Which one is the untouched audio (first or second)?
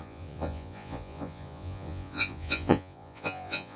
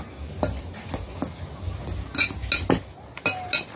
second